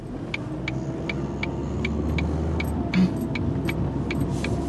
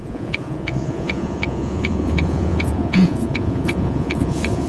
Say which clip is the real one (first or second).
first